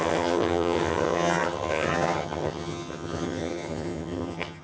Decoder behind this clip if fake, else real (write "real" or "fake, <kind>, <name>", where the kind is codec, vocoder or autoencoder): fake, vocoder, HiFi-GAN